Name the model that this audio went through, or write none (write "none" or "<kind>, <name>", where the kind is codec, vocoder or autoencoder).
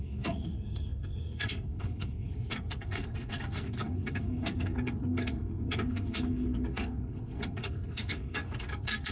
codec, SNAC